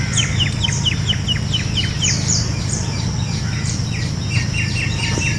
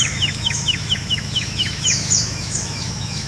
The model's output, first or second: second